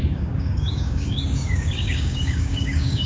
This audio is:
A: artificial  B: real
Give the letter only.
A